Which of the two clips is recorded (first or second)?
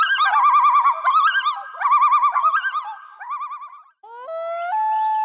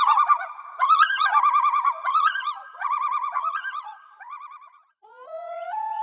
first